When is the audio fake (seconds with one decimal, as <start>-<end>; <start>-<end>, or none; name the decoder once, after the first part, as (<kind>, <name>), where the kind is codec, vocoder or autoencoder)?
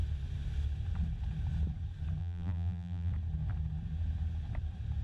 2.2-3.1 (vocoder, BigVGAN v2)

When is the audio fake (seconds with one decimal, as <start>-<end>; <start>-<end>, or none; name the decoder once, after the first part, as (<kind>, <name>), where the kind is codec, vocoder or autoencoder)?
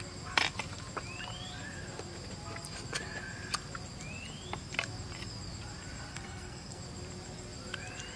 6.1-6.8 (codec, SNAC)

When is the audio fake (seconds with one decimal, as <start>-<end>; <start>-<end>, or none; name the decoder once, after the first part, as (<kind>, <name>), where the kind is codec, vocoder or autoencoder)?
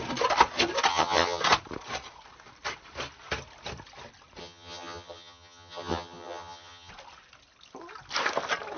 0.9-1.4 (vocoder, HiFi-GAN); 4.4-6.9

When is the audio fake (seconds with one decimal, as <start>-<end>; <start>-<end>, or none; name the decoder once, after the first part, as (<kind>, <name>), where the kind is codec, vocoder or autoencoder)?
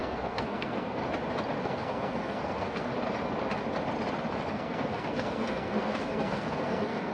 0.0-1.0 (codec, SNAC); 1.6-2.9; 4.5-7.1